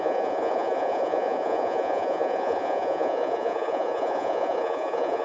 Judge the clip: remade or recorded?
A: remade